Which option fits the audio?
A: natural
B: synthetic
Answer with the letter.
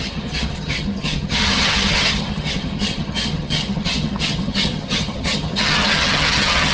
B